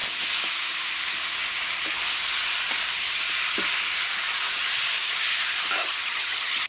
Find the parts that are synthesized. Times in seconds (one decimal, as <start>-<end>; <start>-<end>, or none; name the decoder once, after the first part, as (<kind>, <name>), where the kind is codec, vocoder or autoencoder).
5.8-6.7 (vocoder, HiFi-GAN)